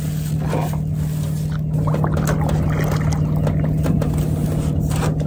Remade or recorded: recorded